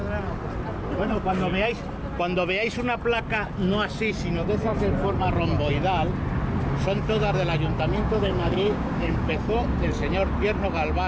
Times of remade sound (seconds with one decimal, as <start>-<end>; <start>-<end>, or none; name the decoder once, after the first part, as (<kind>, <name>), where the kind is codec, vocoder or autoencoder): 8.0-9.3 (codec, DAC)